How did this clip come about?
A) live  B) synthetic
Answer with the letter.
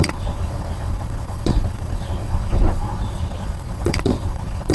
B